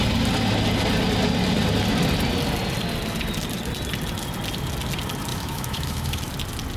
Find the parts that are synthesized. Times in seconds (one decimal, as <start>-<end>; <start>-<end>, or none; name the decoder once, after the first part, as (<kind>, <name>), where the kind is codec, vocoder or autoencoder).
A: 5.3-6.2 (autoencoder, DAC-VAE)